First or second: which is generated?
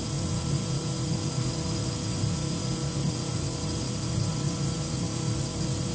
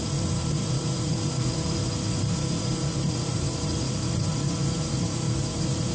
second